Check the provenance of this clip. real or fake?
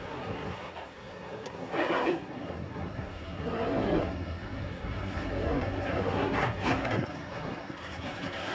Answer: fake